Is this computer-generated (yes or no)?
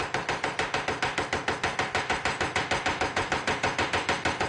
no